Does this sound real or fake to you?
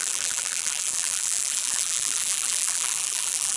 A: fake